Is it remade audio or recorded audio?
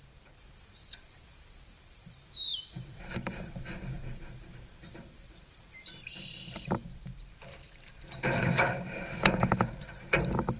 remade